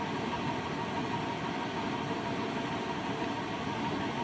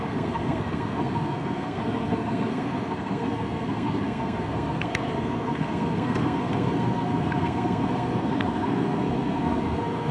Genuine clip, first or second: first